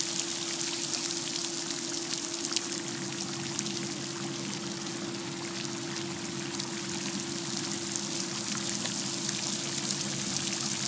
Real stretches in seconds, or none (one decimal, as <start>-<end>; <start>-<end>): 0.0-10.9